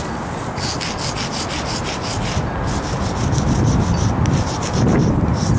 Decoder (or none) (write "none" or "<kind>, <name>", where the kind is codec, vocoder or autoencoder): none